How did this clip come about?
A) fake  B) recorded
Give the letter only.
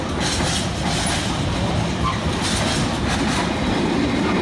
B